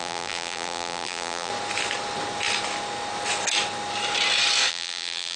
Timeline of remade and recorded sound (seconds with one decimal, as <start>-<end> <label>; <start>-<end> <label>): 0.0-1.5 remade; 1.5-4.7 recorded; 4.7-5.4 remade

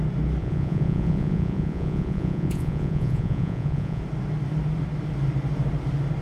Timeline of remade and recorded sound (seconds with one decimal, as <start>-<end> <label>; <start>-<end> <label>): 0.0-0.4 recorded; 0.4-4.0 remade; 4.0-6.2 recorded

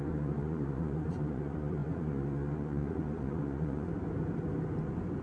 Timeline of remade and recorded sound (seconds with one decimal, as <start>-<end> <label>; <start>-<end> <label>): 0.0-3.9 remade; 3.9-5.2 recorded

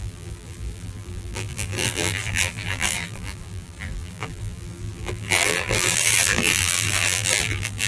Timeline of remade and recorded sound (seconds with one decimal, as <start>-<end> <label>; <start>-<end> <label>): 0.0-7.9 remade

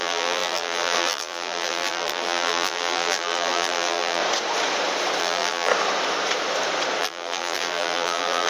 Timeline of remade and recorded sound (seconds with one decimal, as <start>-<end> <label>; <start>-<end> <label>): 0.0-4.2 remade; 4.2-5.2 recorded; 5.2-5.7 remade; 5.7-7.0 recorded; 7.0-8.5 remade

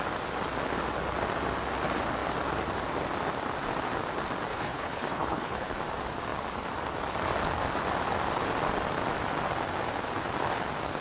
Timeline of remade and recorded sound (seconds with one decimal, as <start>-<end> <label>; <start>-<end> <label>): 0.0-4.5 recorded; 4.5-5.7 remade; 5.7-11.0 recorded

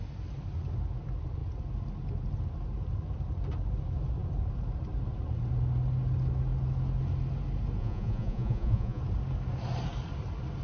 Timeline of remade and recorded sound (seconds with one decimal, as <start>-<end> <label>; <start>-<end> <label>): 0.0-7.8 recorded; 7.8-9.0 remade; 9.0-10.6 recorded

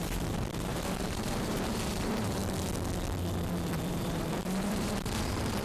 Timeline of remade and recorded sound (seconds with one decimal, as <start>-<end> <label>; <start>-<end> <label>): 0.0-2.4 remade; 2.4-3.9 recorded; 3.9-5.6 remade